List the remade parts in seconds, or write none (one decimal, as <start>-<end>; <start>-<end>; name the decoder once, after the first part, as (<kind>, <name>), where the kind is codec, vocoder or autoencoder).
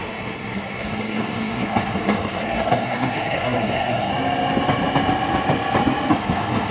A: 0.0-4.1 (codec, SNAC); 6.1-6.7